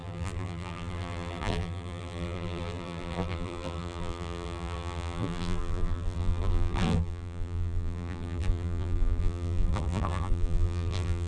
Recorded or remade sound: remade